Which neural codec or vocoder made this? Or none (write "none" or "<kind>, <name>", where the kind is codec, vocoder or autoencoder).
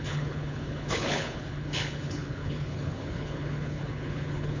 codec, HILCodec